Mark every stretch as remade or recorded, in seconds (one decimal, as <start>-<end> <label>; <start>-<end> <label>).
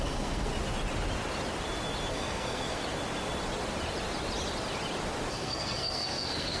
0.0-0.5 remade; 0.5-2.1 recorded; 2.1-2.8 remade; 2.8-5.3 recorded; 5.3-6.6 remade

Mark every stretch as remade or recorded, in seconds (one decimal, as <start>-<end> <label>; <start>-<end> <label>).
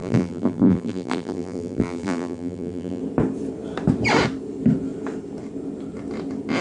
0.0-3.0 remade; 3.0-6.6 recorded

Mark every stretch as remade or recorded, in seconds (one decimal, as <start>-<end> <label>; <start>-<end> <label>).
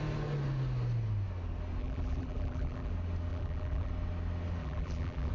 0.0-1.8 recorded; 1.8-2.9 remade; 2.9-3.3 recorded; 3.3-3.9 remade; 3.9-4.6 recorded; 4.6-5.3 remade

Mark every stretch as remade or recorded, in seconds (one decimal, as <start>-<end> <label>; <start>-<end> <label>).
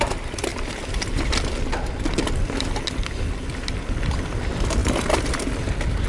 0.0-6.1 recorded